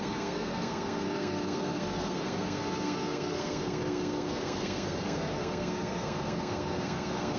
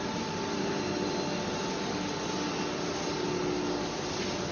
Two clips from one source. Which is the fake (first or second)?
first